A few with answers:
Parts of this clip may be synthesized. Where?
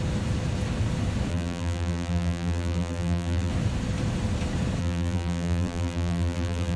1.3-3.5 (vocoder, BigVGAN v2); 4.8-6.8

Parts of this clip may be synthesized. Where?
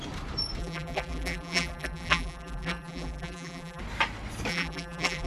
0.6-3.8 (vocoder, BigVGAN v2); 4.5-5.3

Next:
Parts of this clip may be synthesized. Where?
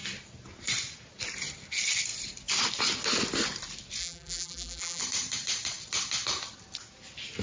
4.0-5.0 (vocoder, BigVGAN v2)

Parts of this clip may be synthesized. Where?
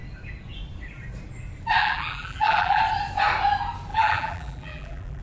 1.8-2.8 (vocoder, BigVGAN v2); 3.9-5.2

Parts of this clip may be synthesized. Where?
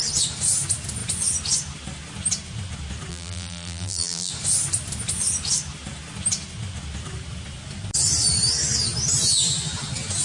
3.1-4.3 (vocoder, BigVGAN v2)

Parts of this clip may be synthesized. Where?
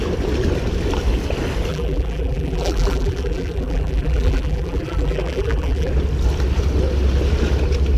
1.7-5.9 (vocoder, BigVGAN v2)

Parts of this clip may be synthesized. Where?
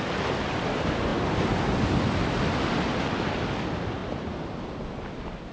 4.0-4.6 (vocoder, BigVGAN v2)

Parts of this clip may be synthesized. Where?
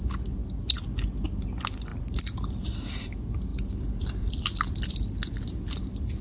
1.9-2.5 (vocoder, BigVGAN v2); 3.5-4.8